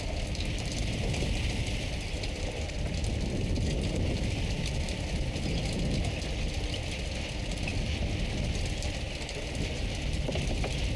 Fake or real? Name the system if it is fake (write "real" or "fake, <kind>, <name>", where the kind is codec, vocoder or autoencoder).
real